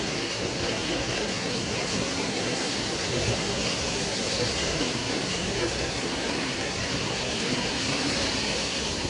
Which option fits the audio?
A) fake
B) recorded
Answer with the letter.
A